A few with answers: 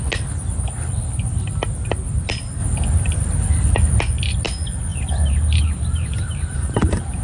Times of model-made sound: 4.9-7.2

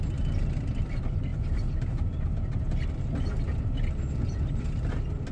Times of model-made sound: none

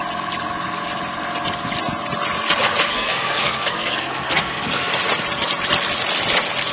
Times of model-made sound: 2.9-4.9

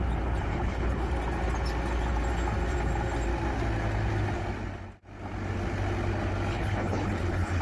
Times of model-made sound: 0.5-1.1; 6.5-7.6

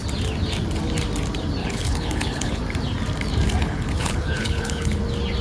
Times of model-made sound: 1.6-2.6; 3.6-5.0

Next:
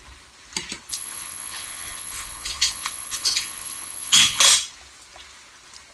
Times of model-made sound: 0.9-4.4

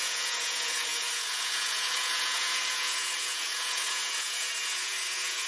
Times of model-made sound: 0.0-5.5

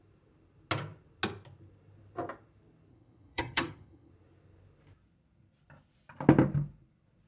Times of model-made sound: 2.9-4.1